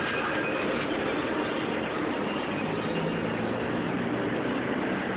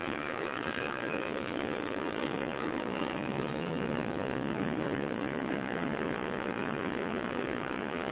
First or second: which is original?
first